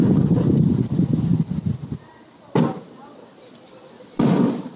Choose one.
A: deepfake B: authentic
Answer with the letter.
B